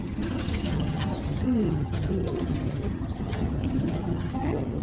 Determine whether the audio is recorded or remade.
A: remade